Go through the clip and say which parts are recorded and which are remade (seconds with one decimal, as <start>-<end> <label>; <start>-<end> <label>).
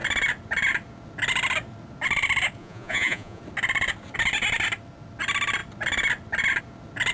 0.0-2.6 recorded; 2.6-3.4 remade; 3.4-7.1 recorded